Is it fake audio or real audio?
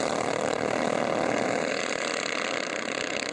real